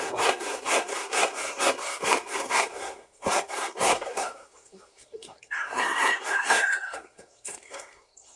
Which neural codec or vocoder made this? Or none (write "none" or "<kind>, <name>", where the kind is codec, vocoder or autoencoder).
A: codec, SNAC